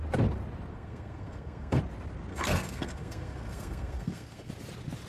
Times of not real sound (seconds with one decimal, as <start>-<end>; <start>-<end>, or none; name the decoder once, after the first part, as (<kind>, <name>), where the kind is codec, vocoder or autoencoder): 0.7-1.8 (codec, SNAC); 2.3-4.5